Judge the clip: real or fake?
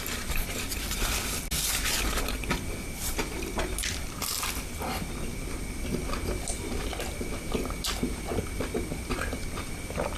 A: real